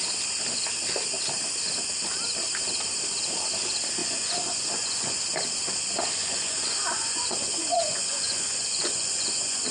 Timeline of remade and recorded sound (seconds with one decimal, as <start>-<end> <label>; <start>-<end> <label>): 0.0-4.0 recorded; 4.0-5.2 remade; 5.2-6.2 recorded; 6.2-9.7 remade